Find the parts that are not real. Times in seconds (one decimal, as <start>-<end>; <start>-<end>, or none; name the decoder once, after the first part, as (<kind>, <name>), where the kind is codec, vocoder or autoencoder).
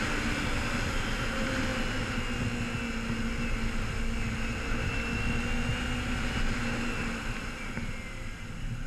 none